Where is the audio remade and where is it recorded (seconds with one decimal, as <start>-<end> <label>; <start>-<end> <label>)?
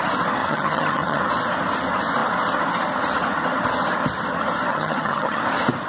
0.0-0.4 recorded; 0.4-1.2 remade; 1.2-4.7 recorded; 4.7-5.4 remade; 5.4-5.9 recorded